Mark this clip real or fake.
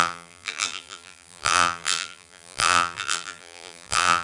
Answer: fake